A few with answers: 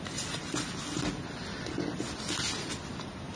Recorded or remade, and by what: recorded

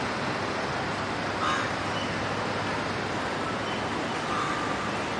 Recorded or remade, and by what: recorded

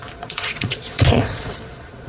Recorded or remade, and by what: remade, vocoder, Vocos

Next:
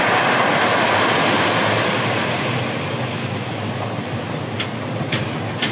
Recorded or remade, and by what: recorded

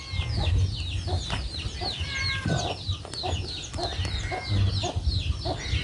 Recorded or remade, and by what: recorded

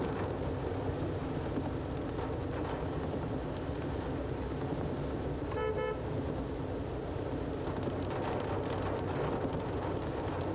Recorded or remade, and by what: recorded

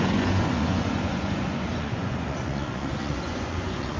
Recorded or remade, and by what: remade, vocoder, Vocos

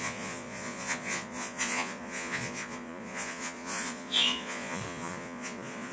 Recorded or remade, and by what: remade, vocoder, Vocos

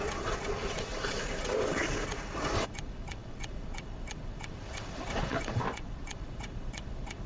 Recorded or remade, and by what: remade, vocoder, Vocos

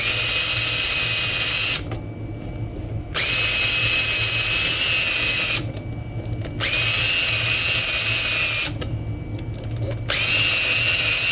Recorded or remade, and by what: recorded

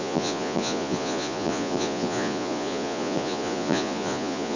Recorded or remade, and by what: remade, vocoder, Vocos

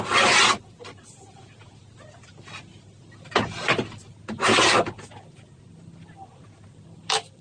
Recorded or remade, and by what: recorded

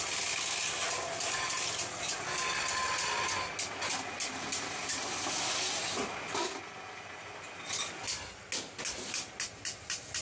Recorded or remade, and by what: recorded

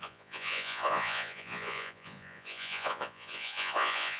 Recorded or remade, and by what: remade, vocoder, Vocos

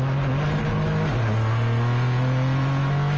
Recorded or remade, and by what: recorded